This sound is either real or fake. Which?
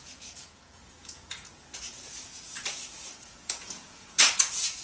fake